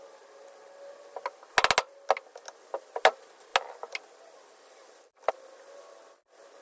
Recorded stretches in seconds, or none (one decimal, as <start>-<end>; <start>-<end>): 0.0-6.6